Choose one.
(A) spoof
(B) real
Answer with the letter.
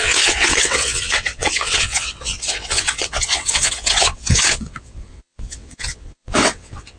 A